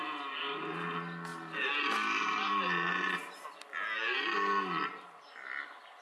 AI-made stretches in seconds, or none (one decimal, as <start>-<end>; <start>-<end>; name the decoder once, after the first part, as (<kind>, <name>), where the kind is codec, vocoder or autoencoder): none